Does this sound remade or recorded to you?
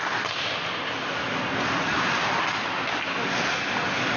recorded